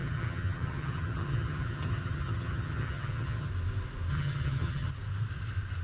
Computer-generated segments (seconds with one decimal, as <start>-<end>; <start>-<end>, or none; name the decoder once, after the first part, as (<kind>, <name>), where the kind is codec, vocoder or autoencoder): 0.0-3.5 (vocoder, HiFi-GAN); 4.1-4.9